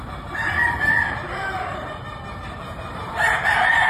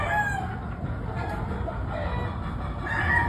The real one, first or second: second